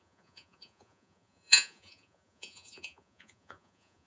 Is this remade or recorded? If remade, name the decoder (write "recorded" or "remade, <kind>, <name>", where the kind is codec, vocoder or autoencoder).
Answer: remade, vocoder, Vocos